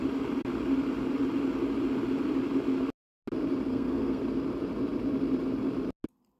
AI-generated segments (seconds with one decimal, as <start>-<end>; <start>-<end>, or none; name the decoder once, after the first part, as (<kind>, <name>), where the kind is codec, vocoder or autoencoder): 3.7-4.2 (codec, SNAC)